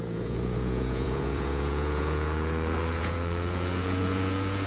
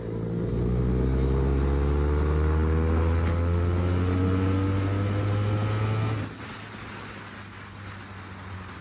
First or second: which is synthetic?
first